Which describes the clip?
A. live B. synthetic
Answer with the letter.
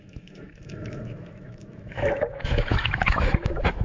B